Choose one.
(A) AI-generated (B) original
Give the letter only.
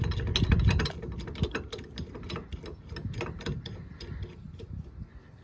B